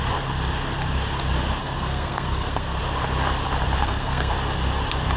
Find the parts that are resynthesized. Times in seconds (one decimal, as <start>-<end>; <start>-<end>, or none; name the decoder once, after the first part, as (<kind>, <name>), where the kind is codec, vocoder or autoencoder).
1.6-2.8 (codec, SNAC); 3.8-4.3